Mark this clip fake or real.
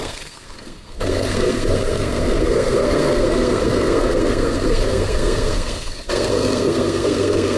fake